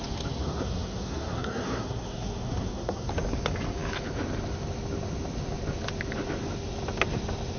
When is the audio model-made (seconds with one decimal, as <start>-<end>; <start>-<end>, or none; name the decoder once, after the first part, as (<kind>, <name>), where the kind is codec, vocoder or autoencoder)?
0.4-3.1 (codec, SNAC)